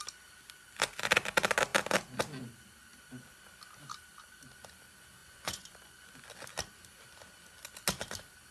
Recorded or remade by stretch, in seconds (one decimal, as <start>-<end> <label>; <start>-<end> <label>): 0.0-5.2 recorded; 5.2-6.3 remade; 6.3-8.5 recorded